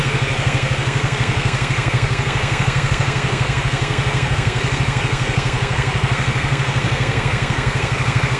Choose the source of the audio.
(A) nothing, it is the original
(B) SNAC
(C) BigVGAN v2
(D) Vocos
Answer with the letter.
B